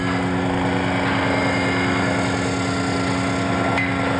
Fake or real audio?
real